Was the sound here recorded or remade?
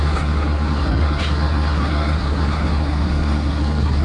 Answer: remade